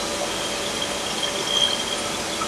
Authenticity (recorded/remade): recorded